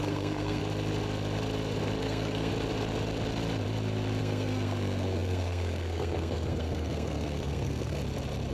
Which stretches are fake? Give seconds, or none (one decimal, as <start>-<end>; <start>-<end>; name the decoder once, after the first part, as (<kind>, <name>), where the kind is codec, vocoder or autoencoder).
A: 0.0-0.6 (codec, SNAC); 2.0-2.5; 4.2-8.0